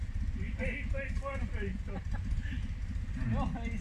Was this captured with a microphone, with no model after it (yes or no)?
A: yes